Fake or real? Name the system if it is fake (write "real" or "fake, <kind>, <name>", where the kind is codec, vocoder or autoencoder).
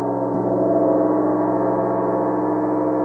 real